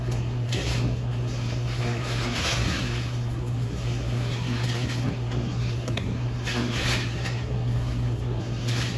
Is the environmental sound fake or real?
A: fake